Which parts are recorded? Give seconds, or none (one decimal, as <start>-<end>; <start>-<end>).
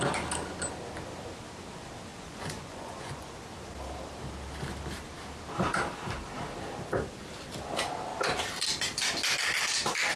0.0-2.1; 3.3-10.2